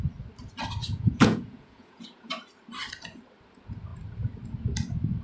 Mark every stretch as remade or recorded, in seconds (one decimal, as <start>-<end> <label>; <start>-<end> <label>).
0.0-0.8 recorded; 0.8-2.3 remade; 2.3-5.2 recorded